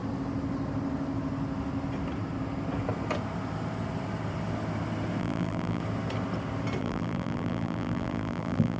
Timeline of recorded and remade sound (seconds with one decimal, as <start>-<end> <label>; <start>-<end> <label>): 0.0-5.2 recorded; 5.2-5.8 remade; 5.8-6.8 recorded; 6.8-8.8 remade